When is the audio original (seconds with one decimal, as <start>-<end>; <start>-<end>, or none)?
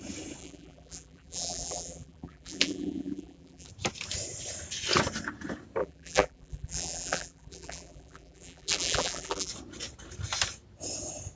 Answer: 0.0-0.4; 3.7-5.8; 9.5-11.4